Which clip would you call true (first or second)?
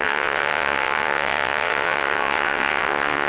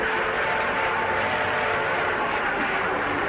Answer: second